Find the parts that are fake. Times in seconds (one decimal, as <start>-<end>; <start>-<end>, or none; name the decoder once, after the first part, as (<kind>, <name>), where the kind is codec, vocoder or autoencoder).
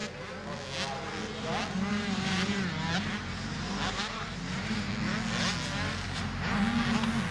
1.9-4.9 (vocoder, BigVGAN v2)